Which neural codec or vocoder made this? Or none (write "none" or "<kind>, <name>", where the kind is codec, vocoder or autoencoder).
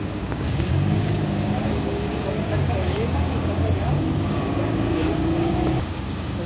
codec, DAC